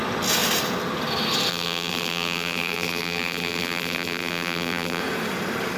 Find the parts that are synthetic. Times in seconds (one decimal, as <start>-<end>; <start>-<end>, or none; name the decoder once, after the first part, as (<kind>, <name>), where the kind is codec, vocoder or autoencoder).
1.5-5.0 (vocoder, BigVGAN v2)

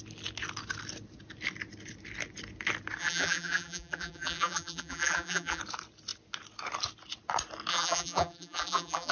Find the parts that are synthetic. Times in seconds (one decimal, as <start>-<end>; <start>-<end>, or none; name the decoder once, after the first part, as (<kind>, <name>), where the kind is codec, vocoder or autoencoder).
3.0-5.6 (vocoder, BigVGAN v2); 7.7-9.1

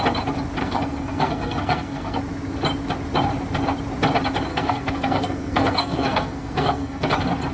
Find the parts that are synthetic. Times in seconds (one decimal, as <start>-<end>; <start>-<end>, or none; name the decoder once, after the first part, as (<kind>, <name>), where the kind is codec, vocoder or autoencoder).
0.6-2.2 (codec, SNAC); 4.5-7.1

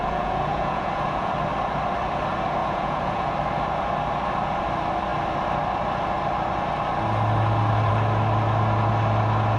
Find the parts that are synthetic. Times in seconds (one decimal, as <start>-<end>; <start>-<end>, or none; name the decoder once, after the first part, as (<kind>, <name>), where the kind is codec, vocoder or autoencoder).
0.0-1.3 (vocoder, Vocos); 2.6-3.3